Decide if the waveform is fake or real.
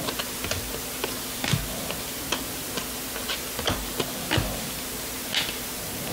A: real